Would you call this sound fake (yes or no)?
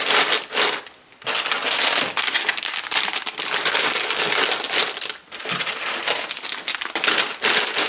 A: no